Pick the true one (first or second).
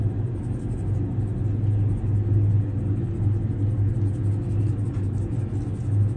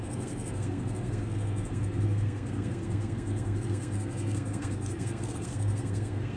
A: first